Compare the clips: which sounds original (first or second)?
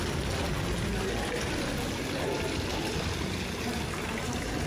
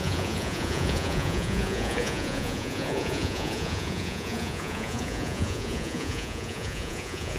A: first